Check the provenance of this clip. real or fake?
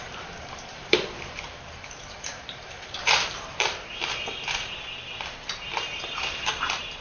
fake